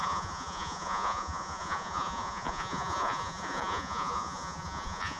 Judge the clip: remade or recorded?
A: remade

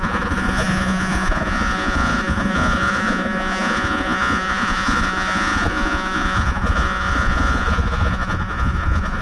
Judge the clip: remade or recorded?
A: remade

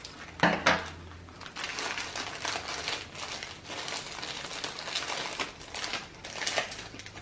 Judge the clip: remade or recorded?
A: recorded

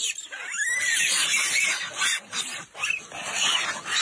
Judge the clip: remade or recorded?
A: recorded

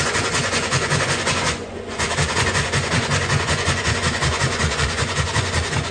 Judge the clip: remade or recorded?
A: remade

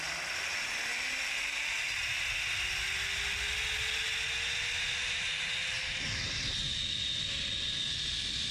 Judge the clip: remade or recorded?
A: recorded